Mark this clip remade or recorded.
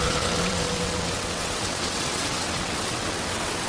remade